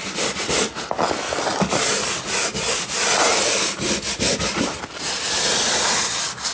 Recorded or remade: recorded